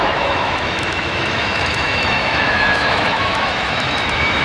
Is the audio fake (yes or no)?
yes